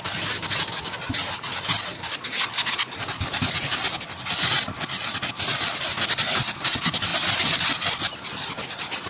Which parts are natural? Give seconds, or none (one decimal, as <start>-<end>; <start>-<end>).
0.0-9.1